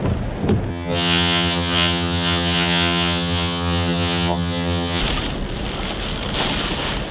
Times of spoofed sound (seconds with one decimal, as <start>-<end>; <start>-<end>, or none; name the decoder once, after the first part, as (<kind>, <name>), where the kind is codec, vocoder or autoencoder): 0.7-5.0 (vocoder, HiFi-GAN)